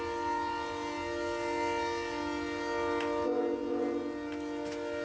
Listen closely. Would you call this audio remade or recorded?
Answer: recorded